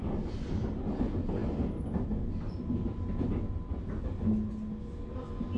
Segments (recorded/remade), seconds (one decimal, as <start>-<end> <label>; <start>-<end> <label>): 0.0-5.6 recorded